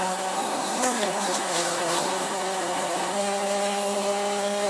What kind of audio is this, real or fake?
fake